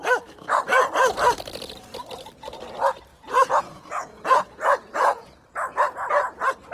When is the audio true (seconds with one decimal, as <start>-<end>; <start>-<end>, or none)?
0.0-3.1; 5.3-6.7